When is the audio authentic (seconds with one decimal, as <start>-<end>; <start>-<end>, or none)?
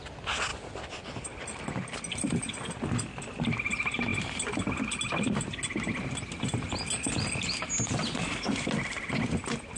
0.0-9.8